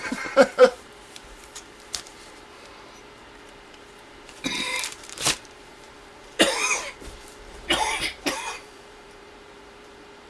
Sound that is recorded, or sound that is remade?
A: remade